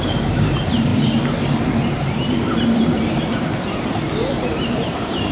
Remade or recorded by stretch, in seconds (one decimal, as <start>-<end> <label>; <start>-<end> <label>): 0.0-0.9 remade; 0.9-4.1 recorded; 4.1-5.3 remade